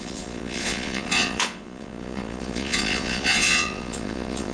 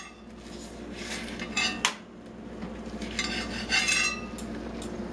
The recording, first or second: second